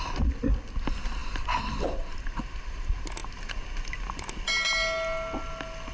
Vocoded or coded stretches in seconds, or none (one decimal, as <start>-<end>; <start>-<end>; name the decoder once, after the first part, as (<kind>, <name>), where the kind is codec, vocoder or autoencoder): none